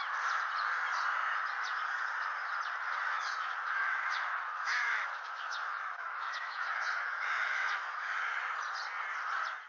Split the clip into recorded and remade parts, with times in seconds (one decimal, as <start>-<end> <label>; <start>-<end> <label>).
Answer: 0.0-3.1 recorded; 3.1-8.2 remade; 8.2-9.7 recorded

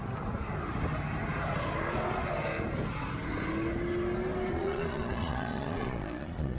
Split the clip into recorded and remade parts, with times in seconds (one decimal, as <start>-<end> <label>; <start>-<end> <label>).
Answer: 0.0-4.5 recorded; 4.5-6.6 remade

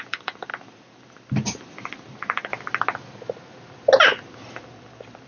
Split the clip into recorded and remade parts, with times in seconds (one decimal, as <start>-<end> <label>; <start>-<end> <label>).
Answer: 0.0-2.5 remade; 2.5-4.0 recorded; 4.0-5.3 remade

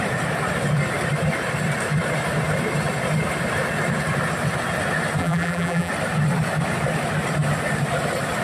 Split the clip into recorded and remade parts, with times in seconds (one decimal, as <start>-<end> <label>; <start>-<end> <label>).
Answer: 0.0-5.2 recorded; 5.2-5.9 remade; 5.9-8.4 recorded

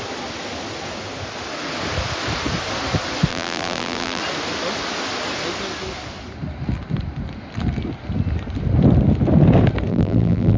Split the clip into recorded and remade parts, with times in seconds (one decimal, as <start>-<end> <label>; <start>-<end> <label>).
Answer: 0.0-3.3 recorded; 3.3-4.2 remade; 4.2-9.9 recorded; 9.9-10.6 remade

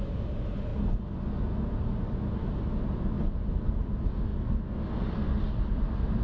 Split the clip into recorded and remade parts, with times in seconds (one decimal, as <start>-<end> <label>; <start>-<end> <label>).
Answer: 0.0-4.3 recorded; 4.3-6.2 remade